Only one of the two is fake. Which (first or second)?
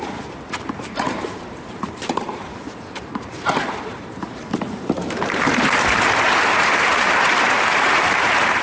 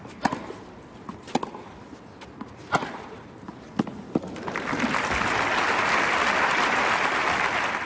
first